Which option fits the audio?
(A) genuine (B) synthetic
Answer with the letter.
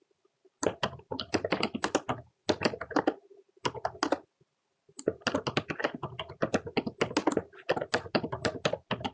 A